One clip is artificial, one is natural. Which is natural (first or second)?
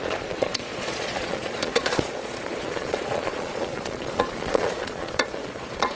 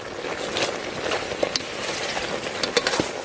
second